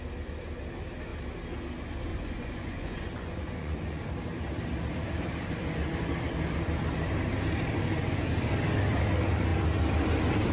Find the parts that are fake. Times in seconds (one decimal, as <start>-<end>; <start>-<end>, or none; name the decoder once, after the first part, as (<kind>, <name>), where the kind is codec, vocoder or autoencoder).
2.1-4.0 (vocoder, Vocos)